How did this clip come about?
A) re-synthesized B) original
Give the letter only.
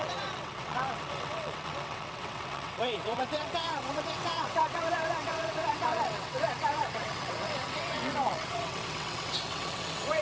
A